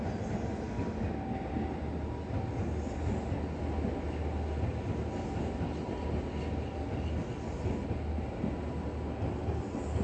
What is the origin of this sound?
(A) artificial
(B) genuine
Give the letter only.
B